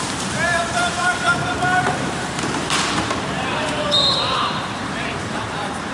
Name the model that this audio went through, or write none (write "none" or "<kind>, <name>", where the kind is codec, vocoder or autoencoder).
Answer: vocoder, BigVGAN v2